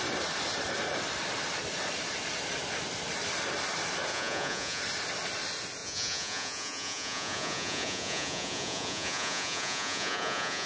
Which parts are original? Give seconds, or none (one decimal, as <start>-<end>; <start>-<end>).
0.0-4.1; 4.8-5.8